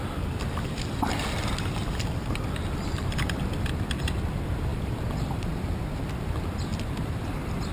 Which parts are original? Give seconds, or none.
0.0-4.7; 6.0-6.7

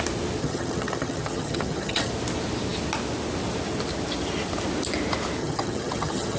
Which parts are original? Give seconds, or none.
0.0-0.4; 2.1-5.4

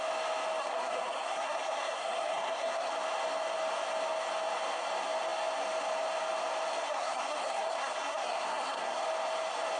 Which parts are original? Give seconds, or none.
0.0-0.6; 2.9-6.7; 9.0-9.8

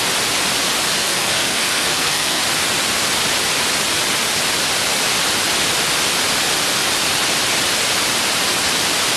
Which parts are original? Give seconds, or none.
0.0-1.0; 2.4-9.2

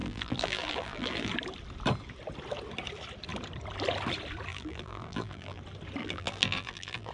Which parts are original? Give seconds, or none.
1.3-4.5; 5.6-6.0

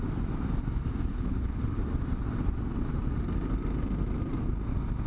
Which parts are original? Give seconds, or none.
0.0-1.1; 1.8-5.1

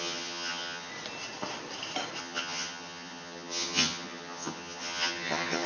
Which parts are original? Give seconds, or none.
0.9-2.2

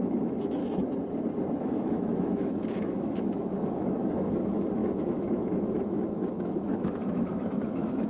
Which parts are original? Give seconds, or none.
0.6-1.6